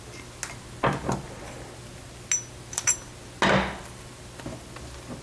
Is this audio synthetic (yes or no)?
no